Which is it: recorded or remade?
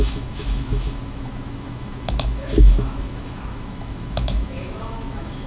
remade